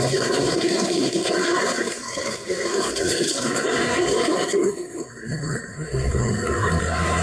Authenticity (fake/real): fake